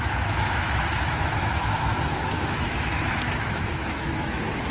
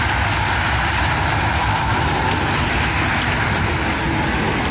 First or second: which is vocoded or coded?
first